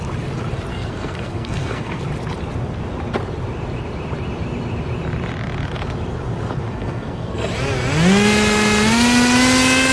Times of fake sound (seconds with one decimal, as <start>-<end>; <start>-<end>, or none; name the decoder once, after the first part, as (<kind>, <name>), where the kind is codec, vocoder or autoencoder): 0.7-2.0 (codec, SNAC); 6.7-7.5